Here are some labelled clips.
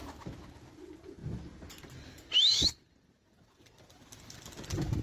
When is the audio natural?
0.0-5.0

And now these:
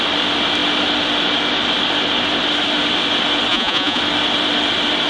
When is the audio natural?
0.0-3.5; 4.0-5.1

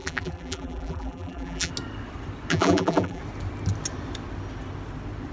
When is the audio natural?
1.7-2.5; 3.2-5.3

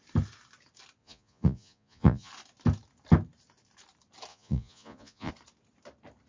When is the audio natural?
0.0-1.0; 2.3-4.3; 5.3-6.3

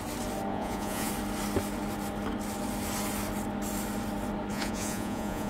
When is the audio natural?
0.0-0.5; 1.1-4.5

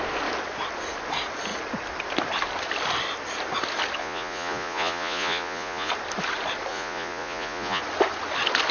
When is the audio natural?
0.0-4.0; 5.9-6.7; 7.8-8.7

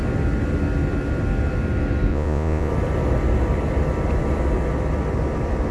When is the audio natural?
0.0-2.1; 2.7-5.7